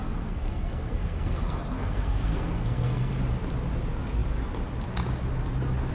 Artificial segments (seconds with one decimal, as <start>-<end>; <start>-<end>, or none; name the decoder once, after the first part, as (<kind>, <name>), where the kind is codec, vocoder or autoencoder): 0.0-3.1 (codec, SNAC)